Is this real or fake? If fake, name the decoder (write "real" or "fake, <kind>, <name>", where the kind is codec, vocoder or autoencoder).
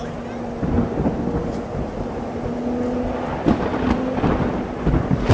real